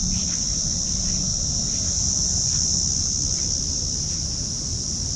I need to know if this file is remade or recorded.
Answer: recorded